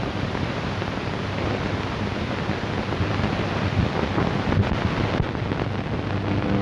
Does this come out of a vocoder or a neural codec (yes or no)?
no